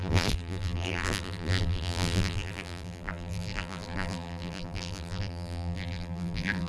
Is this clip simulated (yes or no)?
yes